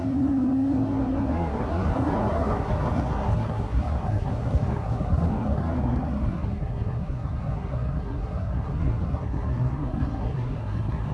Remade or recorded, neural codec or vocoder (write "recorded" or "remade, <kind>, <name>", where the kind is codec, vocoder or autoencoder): remade, codec, SNAC